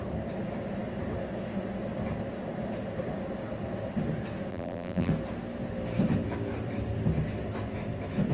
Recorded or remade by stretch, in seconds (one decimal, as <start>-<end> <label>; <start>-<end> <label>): 0.0-4.5 recorded; 4.5-5.1 remade; 5.1-8.3 recorded